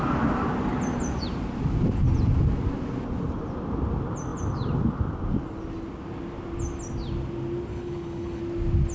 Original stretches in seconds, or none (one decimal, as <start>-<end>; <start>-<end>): 0.0-7.7; 8.4-8.9